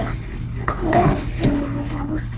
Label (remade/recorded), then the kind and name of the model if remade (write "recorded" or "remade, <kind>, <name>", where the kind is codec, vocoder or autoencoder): remade, codec, HILCodec